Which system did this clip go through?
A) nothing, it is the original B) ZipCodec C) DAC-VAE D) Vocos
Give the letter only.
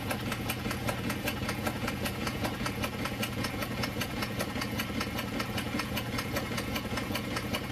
D